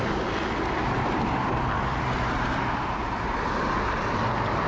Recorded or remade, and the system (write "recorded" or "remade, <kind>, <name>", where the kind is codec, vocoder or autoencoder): recorded